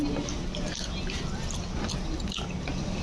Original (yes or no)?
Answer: yes